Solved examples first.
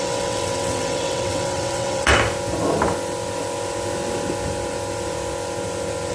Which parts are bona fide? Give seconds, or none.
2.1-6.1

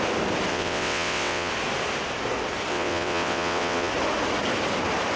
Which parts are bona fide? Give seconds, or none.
0.0-0.5; 1.5-2.7; 3.9-5.2

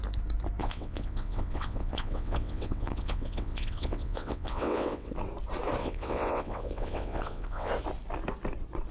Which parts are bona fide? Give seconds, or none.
0.0-0.6; 5.1-5.8; 7.7-8.9

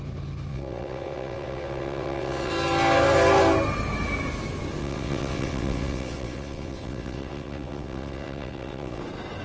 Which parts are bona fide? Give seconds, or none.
0.0-0.5; 2.5-4.8; 9.0-9.4